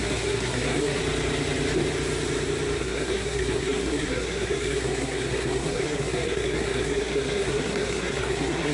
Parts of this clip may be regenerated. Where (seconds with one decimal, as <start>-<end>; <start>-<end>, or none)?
0.0-1.0; 2.8-8.7